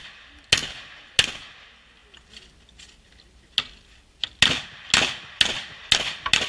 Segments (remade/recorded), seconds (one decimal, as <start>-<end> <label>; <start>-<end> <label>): 0.0-6.5 recorded